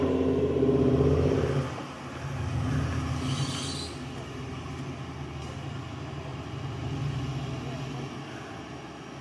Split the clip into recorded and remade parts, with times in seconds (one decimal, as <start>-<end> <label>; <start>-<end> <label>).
0.0-9.2 recorded